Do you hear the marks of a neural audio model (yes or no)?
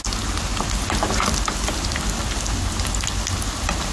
no